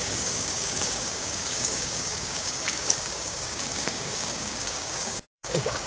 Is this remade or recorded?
remade